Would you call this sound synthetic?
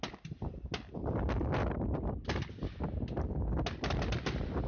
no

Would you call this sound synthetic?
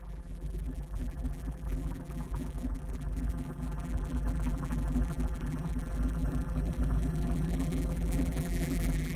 yes